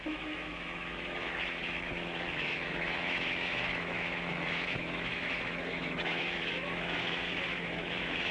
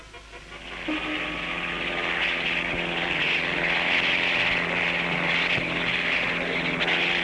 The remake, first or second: first